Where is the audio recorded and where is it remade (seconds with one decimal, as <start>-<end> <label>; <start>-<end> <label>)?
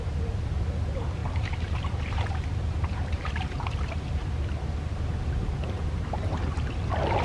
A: 0.0-1.2 recorded; 1.2-3.6 remade; 3.6-7.2 recorded